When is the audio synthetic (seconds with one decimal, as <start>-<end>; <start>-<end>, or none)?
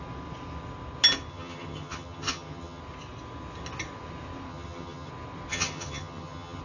1.3-2.8; 4.5-5.1; 5.5-6.6